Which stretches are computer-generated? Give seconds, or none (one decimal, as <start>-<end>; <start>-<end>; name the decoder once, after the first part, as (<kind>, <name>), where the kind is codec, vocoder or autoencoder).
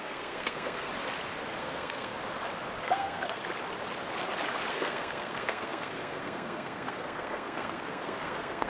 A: 0.0-0.9 (codec, SNAC); 1.6-2.1; 2.8-3.4; 4.7-8.7